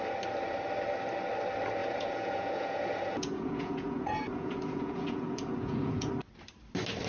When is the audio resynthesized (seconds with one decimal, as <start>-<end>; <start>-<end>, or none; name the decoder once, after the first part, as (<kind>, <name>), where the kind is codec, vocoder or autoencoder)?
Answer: 1.8-6.1 (vocoder, Vocos)